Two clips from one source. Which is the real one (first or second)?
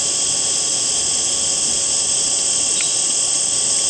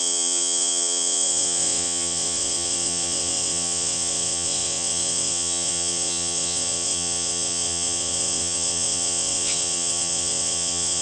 first